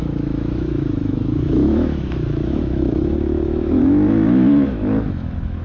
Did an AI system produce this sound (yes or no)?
yes